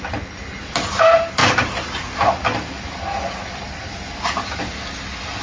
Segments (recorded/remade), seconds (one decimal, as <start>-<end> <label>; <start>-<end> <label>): 0.0-5.4 recorded